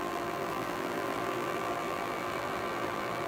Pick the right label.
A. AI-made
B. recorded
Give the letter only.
A